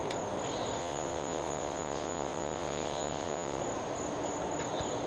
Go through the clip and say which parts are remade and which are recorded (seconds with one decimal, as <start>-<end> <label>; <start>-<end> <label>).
0.0-0.8 recorded; 0.8-3.6 remade; 3.6-5.1 recorded